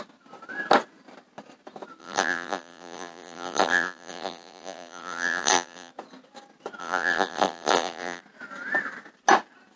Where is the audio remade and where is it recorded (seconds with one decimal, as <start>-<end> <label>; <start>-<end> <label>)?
0.0-2.0 recorded; 2.0-5.9 remade; 5.9-6.8 recorded; 6.8-8.2 remade; 8.2-9.8 recorded